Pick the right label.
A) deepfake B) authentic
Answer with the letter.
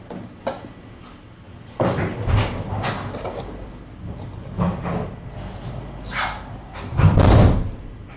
B